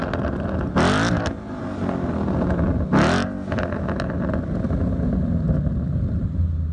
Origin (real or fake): real